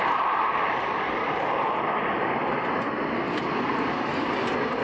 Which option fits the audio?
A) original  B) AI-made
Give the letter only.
A